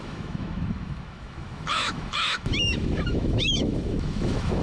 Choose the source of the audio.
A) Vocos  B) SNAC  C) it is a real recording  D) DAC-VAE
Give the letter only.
D